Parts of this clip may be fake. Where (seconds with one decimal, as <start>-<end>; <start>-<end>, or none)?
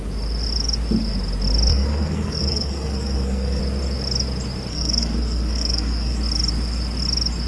1.7-3.6; 4.7-6.2